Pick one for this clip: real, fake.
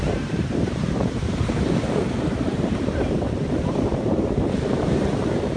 fake